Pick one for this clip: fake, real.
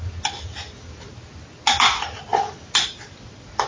real